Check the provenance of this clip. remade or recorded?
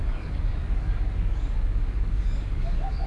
remade